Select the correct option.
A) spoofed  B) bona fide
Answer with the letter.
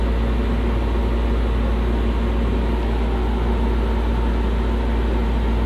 B